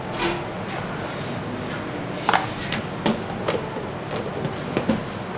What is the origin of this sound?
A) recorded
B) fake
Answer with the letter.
A